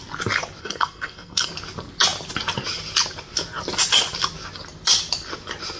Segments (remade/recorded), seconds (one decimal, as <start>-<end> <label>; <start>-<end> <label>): 0.0-0.6 recorded; 0.6-1.5 remade; 1.5-5.8 recorded